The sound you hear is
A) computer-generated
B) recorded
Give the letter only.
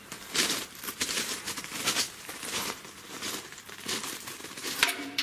A